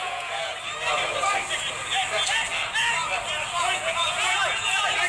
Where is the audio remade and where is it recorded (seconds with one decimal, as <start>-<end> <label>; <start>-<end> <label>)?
0.0-0.5 remade; 0.5-3.6 recorded; 3.6-5.1 remade